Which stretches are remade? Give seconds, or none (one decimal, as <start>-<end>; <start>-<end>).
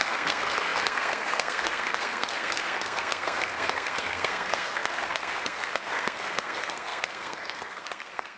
0.0-8.4